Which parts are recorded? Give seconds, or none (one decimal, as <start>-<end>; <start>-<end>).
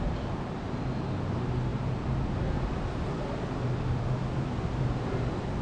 0.0-5.6